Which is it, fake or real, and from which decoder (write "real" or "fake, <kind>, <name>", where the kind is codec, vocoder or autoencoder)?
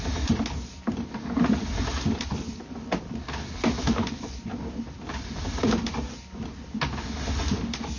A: real